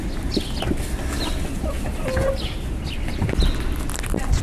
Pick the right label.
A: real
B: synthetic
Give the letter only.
A